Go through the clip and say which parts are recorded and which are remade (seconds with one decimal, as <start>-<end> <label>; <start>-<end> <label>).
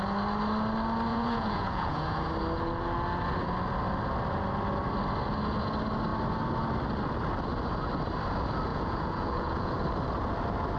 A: 0.0-1.1 recorded; 1.1-2.2 remade; 2.2-8.7 recorded; 8.7-9.7 remade; 9.7-10.8 recorded